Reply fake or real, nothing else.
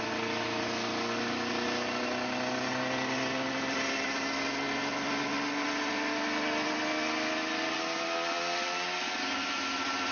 real